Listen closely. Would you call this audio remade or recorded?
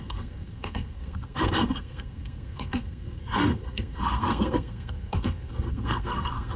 remade